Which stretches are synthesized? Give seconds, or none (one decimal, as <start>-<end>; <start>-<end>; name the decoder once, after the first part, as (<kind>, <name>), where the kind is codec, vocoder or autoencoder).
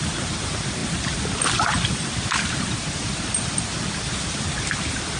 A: none